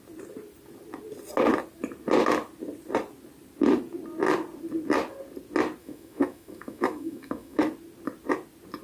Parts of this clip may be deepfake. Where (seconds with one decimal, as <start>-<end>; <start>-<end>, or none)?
5.8-7.6